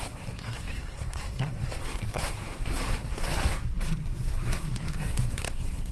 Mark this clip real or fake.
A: fake